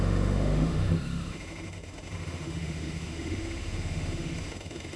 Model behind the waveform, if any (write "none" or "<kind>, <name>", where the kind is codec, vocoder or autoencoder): autoencoder, DAC-VAE